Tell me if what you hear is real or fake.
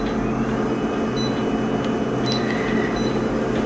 real